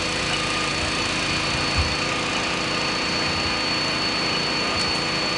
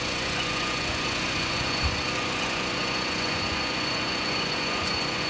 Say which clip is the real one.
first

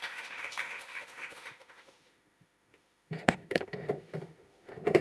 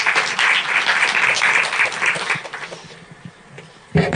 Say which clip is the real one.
second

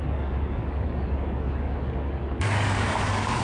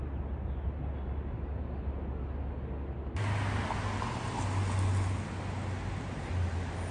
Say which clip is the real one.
second